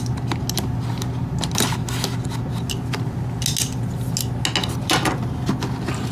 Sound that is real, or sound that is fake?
real